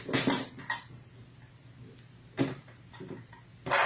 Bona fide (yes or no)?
yes